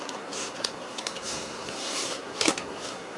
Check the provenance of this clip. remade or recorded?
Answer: remade